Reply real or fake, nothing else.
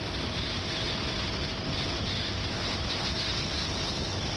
real